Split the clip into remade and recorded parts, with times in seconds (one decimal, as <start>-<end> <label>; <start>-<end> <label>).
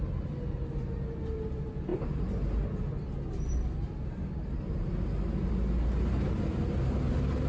0.0-7.5 recorded